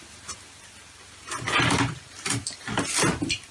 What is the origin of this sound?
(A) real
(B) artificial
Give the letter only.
A